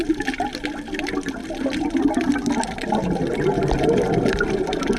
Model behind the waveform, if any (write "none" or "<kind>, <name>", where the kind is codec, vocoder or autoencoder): none